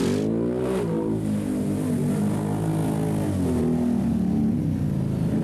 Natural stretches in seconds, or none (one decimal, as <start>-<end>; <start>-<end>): 0.0-5.4